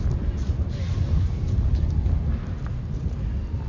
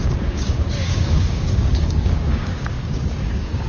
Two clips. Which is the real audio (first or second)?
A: first